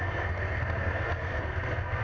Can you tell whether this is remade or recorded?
remade